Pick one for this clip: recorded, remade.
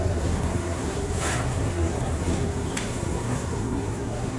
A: remade